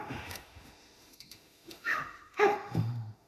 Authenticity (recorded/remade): remade